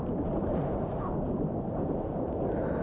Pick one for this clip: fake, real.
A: real